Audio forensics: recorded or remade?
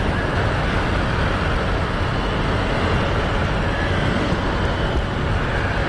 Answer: recorded